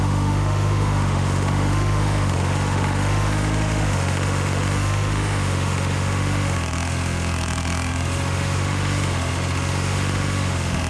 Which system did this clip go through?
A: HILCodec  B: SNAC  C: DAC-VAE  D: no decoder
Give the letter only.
C